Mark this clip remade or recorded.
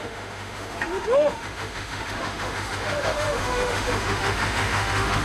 remade